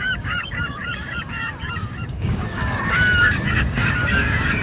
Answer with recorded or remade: remade